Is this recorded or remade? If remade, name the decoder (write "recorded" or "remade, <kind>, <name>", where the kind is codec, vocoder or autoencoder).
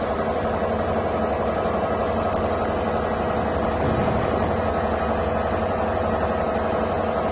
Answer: recorded